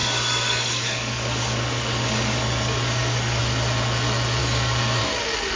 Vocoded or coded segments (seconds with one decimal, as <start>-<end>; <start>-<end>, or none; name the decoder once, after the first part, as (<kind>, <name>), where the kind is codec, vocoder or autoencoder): 0.0-3.4 (codec, DAC); 4.4-5.0